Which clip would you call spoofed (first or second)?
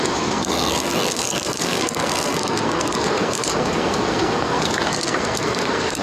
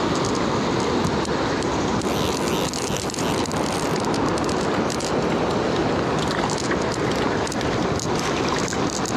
first